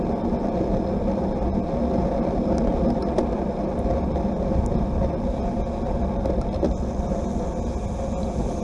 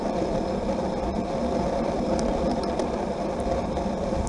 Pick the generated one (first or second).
second